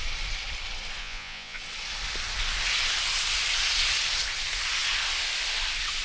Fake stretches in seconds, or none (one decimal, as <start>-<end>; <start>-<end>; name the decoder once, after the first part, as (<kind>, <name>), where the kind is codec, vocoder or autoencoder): 1.0-1.6 (vocoder, Vocos)